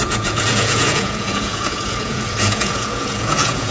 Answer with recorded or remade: remade